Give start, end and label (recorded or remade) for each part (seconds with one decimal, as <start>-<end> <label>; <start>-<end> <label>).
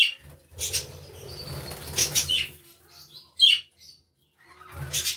0.0-2.0 recorded; 2.0-2.6 remade; 2.6-5.2 recorded